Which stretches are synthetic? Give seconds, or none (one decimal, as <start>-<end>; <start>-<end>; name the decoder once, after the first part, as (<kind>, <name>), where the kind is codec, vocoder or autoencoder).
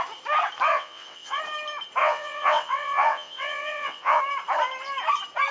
0.7-1.4 (vocoder, WaveNeXt); 2.0-4.2